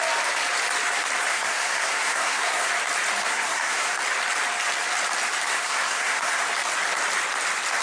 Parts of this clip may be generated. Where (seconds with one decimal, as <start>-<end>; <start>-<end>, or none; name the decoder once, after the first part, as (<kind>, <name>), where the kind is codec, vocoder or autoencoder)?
1.3-2.7 (codec, SNAC); 3.2-3.9; 5.5-6.4